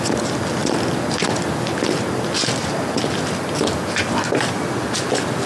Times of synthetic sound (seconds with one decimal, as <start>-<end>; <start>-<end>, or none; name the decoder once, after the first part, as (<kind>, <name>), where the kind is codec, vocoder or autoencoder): none